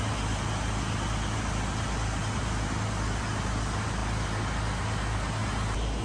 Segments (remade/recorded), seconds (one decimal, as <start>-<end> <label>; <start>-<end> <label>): 0.0-6.0 recorded